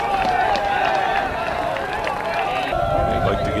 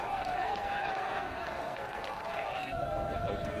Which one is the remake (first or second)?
second